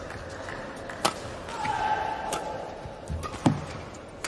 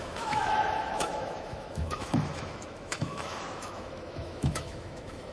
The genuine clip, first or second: first